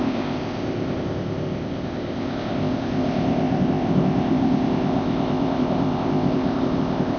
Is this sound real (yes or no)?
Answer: no